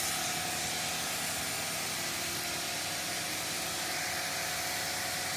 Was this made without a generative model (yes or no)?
yes